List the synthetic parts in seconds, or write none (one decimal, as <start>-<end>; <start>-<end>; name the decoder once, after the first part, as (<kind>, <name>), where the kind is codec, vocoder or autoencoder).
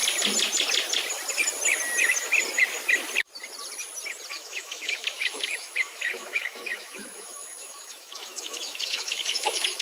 4.3-9.8 (autoencoder, DAC-VAE)